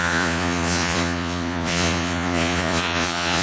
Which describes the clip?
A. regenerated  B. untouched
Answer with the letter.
A